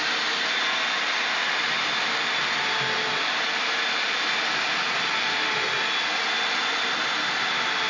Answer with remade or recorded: recorded